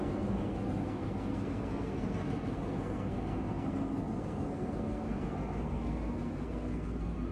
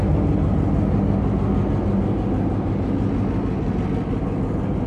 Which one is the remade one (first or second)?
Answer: first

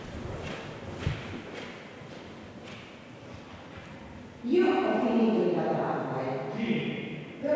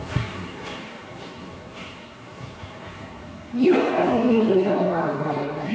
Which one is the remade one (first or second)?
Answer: second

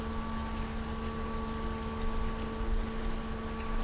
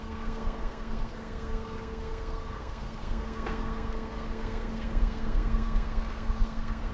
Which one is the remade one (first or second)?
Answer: second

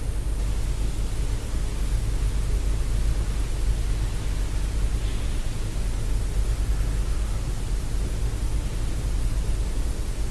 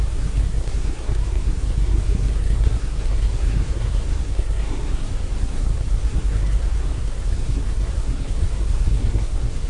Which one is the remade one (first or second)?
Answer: second